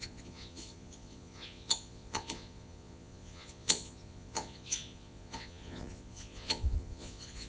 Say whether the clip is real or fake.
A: fake